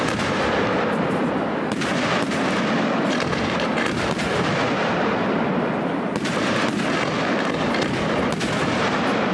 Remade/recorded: recorded